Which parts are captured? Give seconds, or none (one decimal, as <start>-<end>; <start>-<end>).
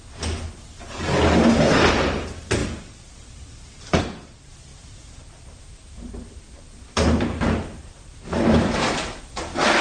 0.0-2.6; 4.0-4.7; 9.2-9.8